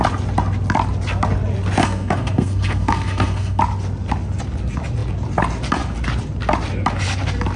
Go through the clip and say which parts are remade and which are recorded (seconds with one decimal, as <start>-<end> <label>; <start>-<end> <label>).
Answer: 0.0-1.8 recorded; 1.8-3.6 remade; 3.6-7.6 recorded